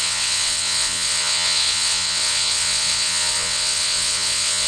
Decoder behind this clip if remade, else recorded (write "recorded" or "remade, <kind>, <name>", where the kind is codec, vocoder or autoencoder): remade, vocoder, WaveNeXt